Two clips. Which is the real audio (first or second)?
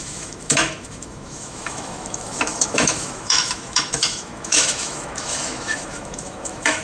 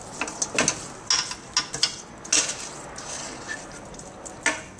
second